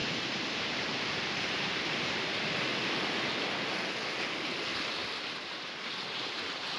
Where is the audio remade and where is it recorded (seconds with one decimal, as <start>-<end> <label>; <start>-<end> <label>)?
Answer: 0.0-2.7 remade; 2.7-4.2 recorded; 4.2-5.0 remade; 5.0-5.6 recorded; 5.6-6.8 remade